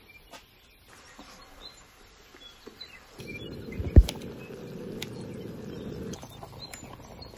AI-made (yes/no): no